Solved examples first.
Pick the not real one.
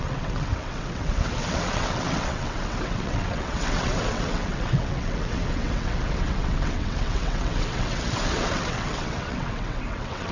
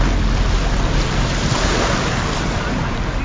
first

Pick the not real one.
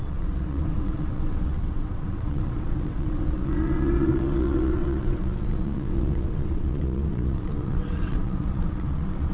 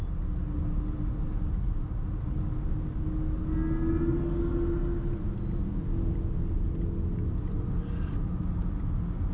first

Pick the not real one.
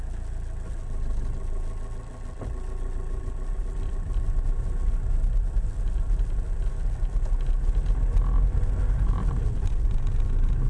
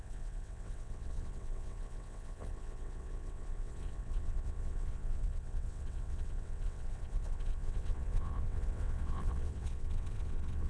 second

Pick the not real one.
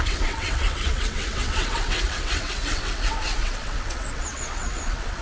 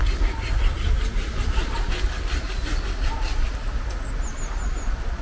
first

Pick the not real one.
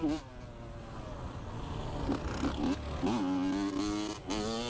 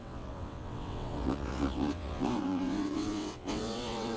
second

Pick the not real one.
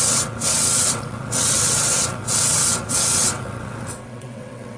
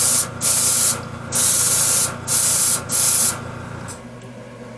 first